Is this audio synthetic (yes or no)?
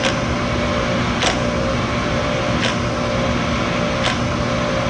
no